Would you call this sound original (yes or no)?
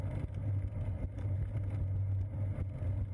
yes